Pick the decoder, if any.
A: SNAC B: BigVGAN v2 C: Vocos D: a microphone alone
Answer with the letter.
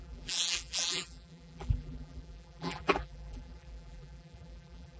B